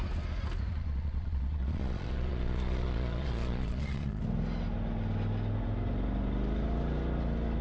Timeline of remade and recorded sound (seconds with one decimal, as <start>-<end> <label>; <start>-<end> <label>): 0.0-0.7 recorded; 0.7-4.2 remade; 4.2-7.6 recorded